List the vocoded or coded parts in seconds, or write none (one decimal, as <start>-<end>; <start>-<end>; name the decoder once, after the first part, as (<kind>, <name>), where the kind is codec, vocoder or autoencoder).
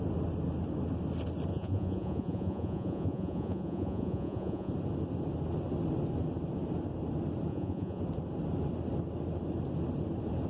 1.5-4.7 (vocoder, Vocos); 7.5-8.0